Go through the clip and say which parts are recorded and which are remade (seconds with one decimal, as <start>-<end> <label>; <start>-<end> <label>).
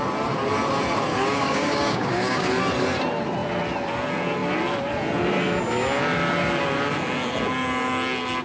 0.0-1.1 recorded; 1.1-2.5 remade; 2.5-8.4 recorded